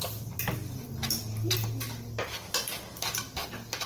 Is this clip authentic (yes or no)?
yes